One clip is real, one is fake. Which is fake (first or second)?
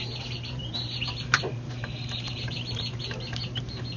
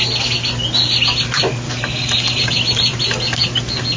first